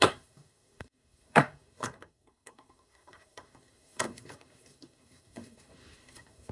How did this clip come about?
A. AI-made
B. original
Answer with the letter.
A